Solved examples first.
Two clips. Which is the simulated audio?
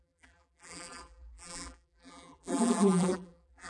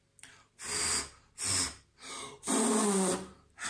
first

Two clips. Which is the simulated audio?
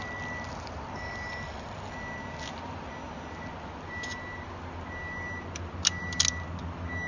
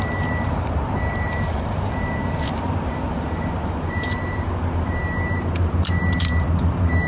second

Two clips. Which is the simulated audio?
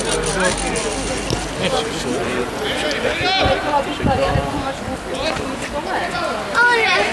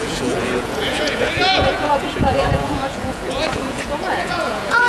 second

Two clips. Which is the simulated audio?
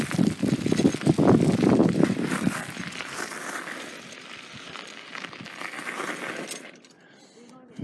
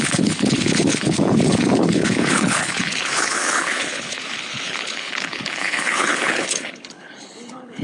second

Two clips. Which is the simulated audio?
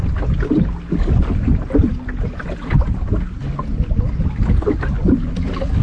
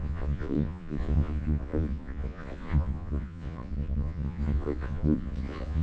second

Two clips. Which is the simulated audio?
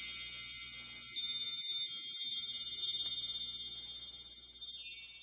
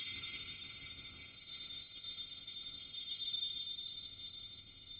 second